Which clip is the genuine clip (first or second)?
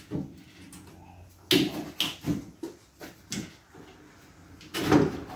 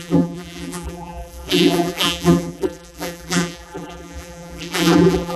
first